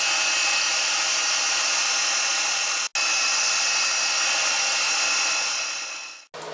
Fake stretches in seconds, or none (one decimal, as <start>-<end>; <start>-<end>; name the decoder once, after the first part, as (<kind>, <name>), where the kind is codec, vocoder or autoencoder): none